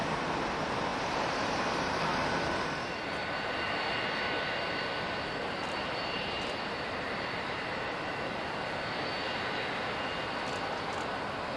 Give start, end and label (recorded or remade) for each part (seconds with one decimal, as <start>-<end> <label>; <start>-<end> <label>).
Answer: 0.0-0.9 recorded; 0.9-3.8 remade; 3.8-5.4 recorded; 5.4-8.4 remade; 8.4-11.6 recorded